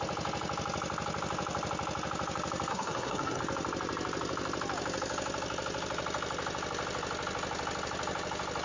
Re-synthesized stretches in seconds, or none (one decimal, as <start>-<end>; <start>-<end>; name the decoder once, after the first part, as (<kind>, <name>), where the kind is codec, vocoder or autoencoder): 2.7-3.4 (codec, SNAC)